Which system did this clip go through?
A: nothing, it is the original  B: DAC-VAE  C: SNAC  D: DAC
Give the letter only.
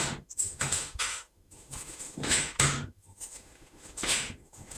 B